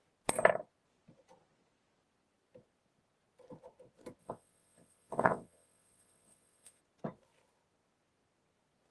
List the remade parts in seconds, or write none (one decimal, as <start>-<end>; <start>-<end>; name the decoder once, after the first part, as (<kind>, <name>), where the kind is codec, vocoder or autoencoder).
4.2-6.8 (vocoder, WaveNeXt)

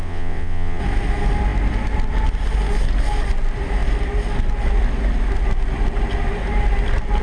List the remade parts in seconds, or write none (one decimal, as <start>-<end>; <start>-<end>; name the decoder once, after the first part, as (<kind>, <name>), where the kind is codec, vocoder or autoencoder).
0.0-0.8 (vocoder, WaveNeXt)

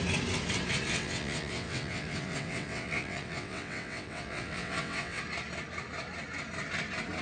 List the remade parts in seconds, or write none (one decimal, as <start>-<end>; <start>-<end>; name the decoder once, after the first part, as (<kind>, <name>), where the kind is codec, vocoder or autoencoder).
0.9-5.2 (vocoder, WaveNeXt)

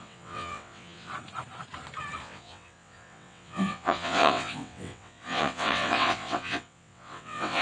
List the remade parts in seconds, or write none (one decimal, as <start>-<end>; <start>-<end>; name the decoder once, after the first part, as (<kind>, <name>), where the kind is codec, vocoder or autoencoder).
0.0-1.1 (vocoder, WaveNeXt); 2.2-7.6

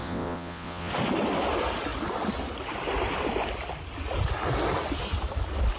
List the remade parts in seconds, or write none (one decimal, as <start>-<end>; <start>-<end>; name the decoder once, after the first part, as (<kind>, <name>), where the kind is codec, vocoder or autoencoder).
0.0-0.9 (vocoder, WaveNeXt)

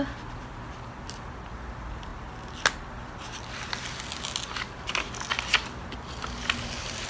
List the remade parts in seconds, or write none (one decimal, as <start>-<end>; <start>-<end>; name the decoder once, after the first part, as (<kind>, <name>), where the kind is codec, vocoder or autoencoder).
none

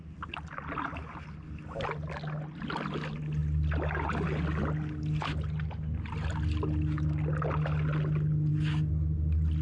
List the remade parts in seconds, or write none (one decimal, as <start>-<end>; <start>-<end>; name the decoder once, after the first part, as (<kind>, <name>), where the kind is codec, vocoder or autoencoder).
none

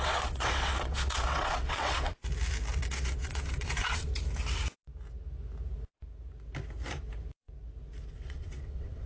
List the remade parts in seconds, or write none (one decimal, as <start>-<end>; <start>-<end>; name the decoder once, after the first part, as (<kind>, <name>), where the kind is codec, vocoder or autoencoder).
0.0-2.1 (vocoder, WaveNeXt); 2.9-4.1; 8.1-9.1